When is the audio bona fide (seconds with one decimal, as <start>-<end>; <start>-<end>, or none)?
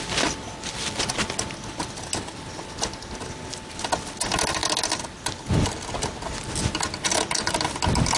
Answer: 0.0-8.2